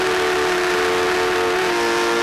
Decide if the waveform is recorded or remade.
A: recorded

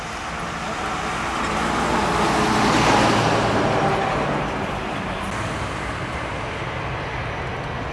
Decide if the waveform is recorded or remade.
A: recorded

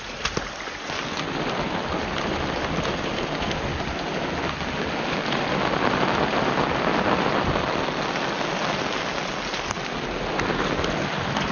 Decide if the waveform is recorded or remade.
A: recorded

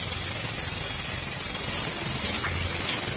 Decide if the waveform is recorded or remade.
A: recorded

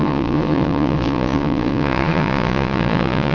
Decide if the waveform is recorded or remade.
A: remade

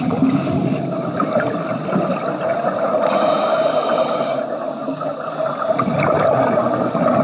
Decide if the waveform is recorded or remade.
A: recorded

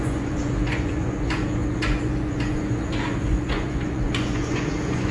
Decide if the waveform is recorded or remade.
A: remade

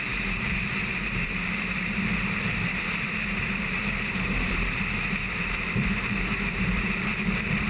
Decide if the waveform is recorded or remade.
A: remade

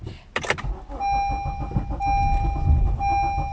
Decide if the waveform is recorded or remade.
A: recorded